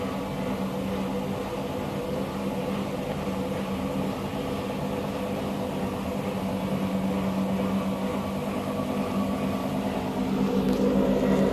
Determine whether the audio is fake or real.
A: real